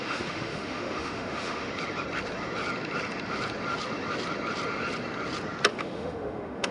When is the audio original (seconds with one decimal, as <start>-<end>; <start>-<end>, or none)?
1.7-5.7